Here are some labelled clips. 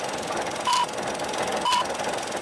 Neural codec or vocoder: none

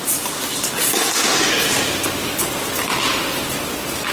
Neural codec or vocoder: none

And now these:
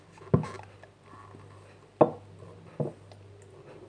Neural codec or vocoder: none